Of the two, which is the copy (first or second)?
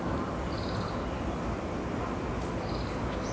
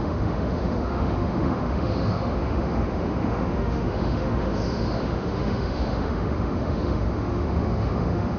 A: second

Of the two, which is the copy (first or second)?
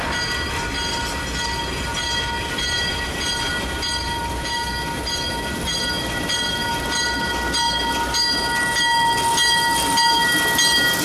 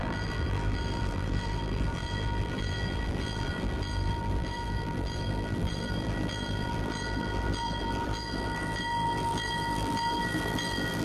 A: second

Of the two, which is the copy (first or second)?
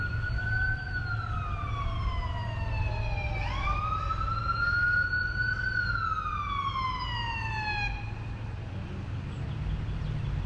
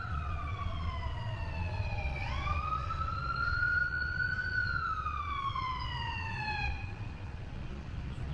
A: second